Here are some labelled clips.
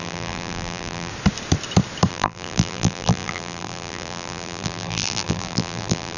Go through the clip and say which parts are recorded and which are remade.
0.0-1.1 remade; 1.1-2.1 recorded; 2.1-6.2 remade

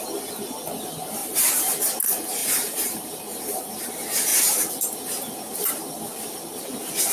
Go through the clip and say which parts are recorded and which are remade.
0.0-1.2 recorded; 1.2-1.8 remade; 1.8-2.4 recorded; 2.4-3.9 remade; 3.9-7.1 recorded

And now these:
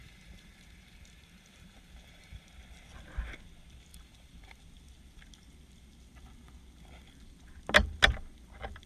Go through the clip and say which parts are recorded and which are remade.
0.0-2.5 remade; 2.5-3.9 recorded; 3.9-4.6 remade; 4.6-8.9 recorded

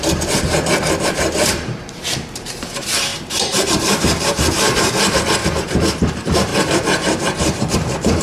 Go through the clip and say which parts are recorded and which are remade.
0.0-8.2 remade

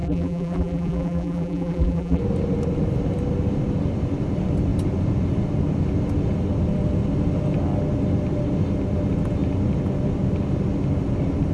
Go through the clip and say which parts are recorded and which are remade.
0.0-2.2 remade; 2.2-11.5 recorded

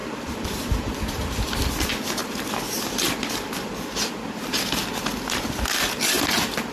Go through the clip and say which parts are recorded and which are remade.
0.0-0.9 remade; 0.9-2.2 recorded; 2.2-3.7 remade; 3.7-6.7 recorded

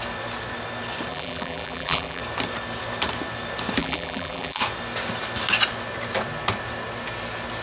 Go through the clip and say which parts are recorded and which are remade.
0.0-1.1 recorded; 1.1-2.2 remade; 2.2-3.8 recorded; 3.8-4.6 remade; 4.6-7.6 recorded

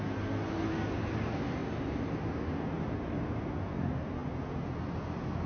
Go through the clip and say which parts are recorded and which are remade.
0.0-1.6 recorded; 1.6-3.5 remade; 3.5-5.5 recorded